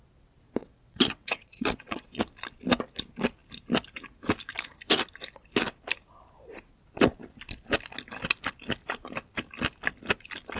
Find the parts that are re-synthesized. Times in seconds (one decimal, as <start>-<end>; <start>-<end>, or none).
0.6-2.2